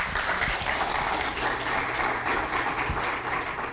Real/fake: real